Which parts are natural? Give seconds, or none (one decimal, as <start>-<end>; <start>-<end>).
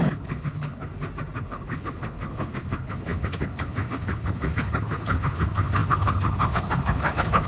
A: 0.9-1.4